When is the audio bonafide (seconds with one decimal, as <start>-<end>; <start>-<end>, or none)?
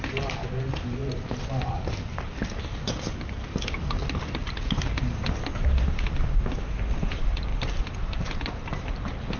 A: 1.0-1.6; 2.3-6.9